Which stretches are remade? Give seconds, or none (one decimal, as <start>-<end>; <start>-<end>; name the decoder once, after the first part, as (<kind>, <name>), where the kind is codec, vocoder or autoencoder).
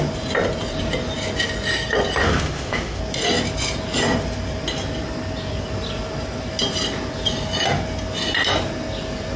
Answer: 2.2-3.0 (autoencoder, DAC-VAE)